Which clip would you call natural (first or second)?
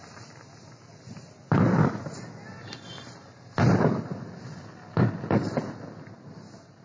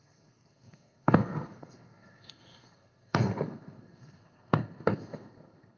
first